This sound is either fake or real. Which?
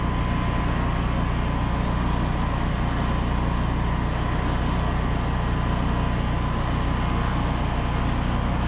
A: real